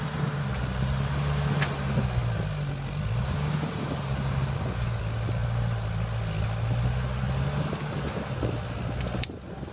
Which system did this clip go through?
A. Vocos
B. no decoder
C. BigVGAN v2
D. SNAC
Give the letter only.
B